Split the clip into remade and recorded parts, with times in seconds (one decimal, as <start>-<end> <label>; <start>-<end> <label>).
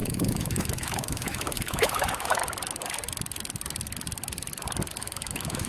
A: 0.0-2.4 remade; 2.4-5.0 recorded; 5.0-5.7 remade